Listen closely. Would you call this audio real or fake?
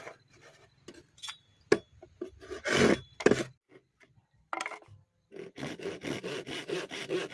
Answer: real